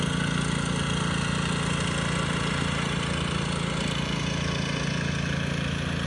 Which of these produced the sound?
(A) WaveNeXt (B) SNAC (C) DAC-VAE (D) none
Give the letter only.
D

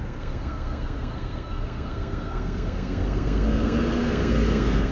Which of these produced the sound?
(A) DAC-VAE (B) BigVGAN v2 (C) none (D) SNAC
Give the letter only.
D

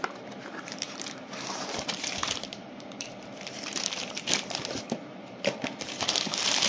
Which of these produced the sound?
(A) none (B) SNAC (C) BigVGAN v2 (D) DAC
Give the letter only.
C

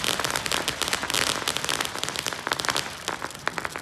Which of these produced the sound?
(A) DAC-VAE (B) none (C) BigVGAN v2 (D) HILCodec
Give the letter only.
B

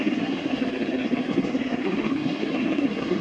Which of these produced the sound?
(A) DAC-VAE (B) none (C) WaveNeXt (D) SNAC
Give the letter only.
D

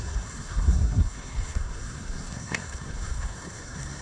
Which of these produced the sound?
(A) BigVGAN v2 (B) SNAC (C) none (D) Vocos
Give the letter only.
B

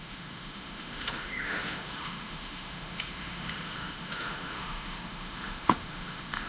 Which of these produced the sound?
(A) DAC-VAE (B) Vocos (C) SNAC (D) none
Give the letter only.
A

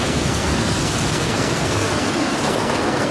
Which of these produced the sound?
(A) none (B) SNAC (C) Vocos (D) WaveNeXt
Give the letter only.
B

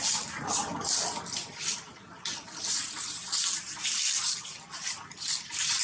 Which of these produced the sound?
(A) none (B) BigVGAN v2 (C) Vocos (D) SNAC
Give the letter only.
A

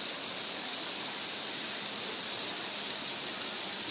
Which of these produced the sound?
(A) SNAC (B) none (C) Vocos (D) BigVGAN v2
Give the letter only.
B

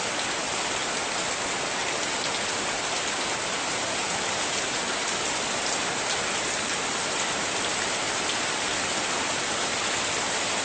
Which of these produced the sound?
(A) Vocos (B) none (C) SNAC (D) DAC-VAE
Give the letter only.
B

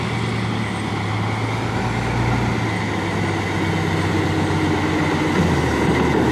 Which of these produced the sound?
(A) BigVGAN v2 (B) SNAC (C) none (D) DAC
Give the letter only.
C